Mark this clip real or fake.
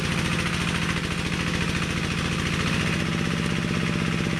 real